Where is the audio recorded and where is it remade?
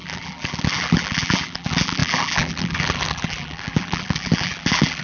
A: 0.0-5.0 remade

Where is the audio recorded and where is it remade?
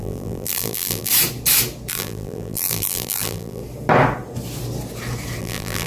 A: 0.0-1.1 remade; 1.1-1.9 recorded; 1.9-3.6 remade; 3.6-5.4 recorded; 5.4-5.9 remade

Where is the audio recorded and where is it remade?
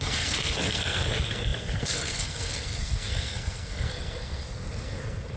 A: 0.0-5.4 remade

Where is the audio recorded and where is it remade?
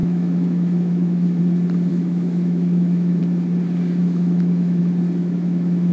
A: 0.0-1.4 remade; 1.4-1.9 recorded; 1.9-3.2 remade; 3.2-4.0 recorded; 4.0-4.8 remade; 4.8-5.2 recorded; 5.2-5.9 remade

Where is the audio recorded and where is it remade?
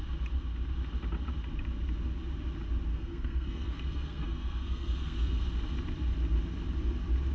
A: 0.0-2.9 recorded; 2.9-5.4 remade; 5.4-7.3 recorded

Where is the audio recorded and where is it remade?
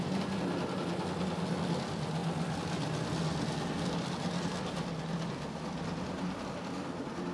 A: 0.0-7.3 recorded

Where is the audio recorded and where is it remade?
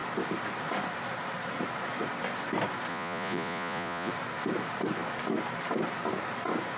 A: 0.0-2.9 recorded; 2.9-4.1 remade; 4.1-6.8 recorded